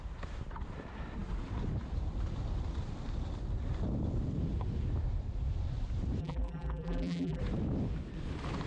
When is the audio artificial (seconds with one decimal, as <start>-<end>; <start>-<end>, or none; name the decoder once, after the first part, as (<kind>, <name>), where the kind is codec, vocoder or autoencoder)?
6.2-7.4 (vocoder, BigVGAN v2)